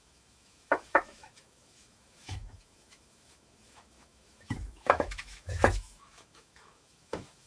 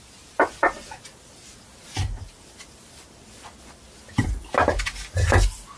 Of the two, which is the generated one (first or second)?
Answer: first